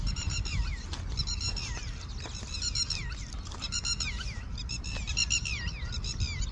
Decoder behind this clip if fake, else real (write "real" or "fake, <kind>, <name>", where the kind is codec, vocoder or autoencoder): real